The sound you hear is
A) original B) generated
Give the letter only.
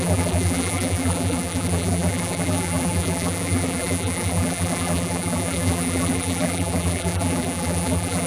B